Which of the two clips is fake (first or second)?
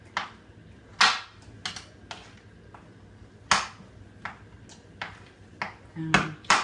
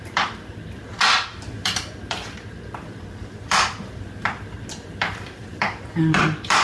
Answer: second